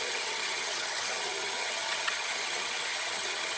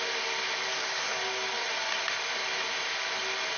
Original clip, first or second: second